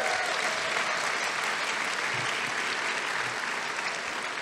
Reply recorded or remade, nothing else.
recorded